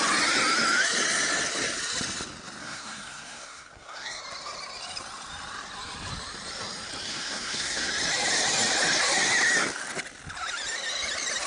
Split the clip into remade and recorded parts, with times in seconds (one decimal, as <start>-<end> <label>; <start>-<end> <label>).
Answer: 0.0-2.6 recorded; 2.6-4.2 remade; 4.2-7.1 recorded; 7.1-7.9 remade; 7.9-11.5 recorded